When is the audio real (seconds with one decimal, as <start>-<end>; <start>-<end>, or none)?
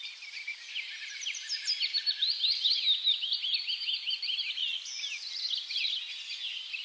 0.0-6.8